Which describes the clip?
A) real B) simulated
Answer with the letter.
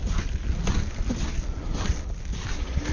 A